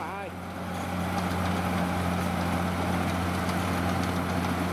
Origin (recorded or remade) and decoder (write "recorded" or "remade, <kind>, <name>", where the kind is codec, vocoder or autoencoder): recorded